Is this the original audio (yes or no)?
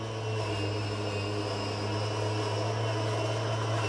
yes